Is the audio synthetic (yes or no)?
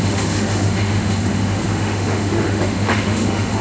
yes